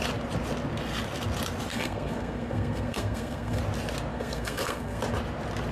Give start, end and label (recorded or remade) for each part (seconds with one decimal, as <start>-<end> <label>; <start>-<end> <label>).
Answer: 0.0-1.7 recorded; 1.7-3.6 remade; 3.6-4.1 recorded; 4.1-5.0 remade; 5.0-5.7 recorded